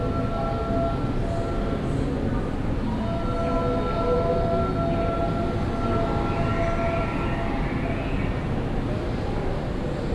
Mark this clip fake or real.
real